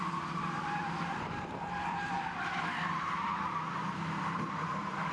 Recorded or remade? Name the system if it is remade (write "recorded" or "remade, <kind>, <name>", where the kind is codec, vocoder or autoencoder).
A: remade, vocoder, BigVGAN v2